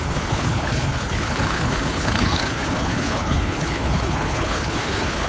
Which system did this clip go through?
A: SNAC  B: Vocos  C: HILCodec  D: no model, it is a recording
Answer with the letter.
C